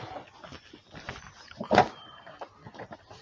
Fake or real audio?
real